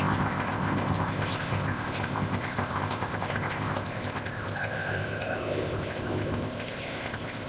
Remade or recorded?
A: remade